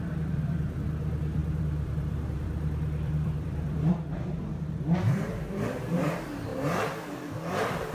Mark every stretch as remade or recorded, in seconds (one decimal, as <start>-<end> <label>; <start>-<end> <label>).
0.0-7.9 remade